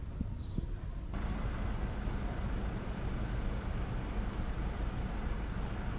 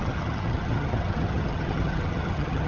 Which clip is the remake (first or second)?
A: second